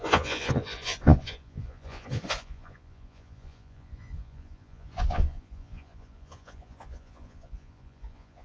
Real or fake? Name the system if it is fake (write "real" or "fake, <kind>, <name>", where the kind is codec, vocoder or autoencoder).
fake, vocoder, Vocos